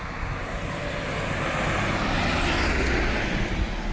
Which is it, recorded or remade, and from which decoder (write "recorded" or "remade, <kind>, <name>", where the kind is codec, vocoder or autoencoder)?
recorded